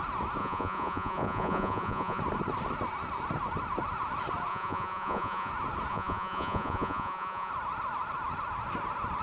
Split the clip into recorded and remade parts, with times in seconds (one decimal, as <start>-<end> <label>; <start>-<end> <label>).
0.0-0.4 recorded; 0.4-2.2 remade; 2.2-4.5 recorded; 4.5-5.5 remade; 5.5-5.9 recorded; 5.9-7.5 remade; 7.5-9.2 recorded